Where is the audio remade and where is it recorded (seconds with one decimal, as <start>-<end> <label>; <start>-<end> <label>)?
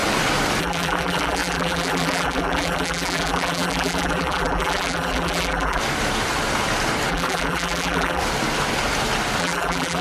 0.0-0.6 recorded; 0.6-5.8 remade; 5.8-7.1 recorded; 7.1-8.2 remade; 8.2-9.4 recorded; 9.4-10.0 remade